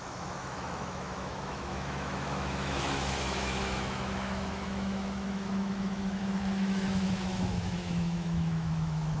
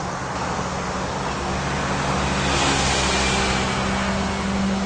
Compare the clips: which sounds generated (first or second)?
first